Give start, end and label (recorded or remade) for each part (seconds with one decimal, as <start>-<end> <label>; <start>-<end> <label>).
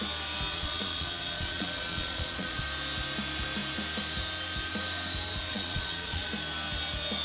0.0-0.5 recorded; 0.5-2.6 remade; 2.6-5.5 recorded; 5.5-6.3 remade; 6.3-7.2 recorded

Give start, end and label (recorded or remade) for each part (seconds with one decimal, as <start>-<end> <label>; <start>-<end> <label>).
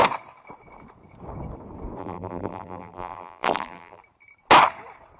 0.0-2.0 recorded; 2.0-4.0 remade; 4.0-5.2 recorded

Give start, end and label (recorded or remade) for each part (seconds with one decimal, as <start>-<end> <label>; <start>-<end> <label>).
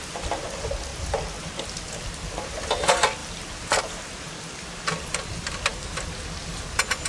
0.0-3.2 recorded; 3.2-3.8 remade; 3.8-7.1 recorded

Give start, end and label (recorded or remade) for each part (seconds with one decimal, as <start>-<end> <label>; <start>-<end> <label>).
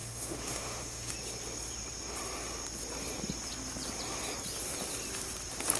0.0-1.1 remade; 1.1-5.8 recorded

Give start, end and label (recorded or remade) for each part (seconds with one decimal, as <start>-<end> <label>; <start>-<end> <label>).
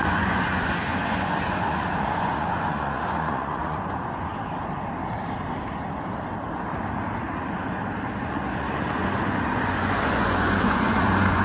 0.0-4.3 remade; 4.3-8.2 recorded; 8.2-11.4 remade